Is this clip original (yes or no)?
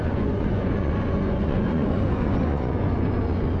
no